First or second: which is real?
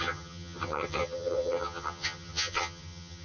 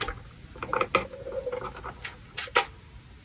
second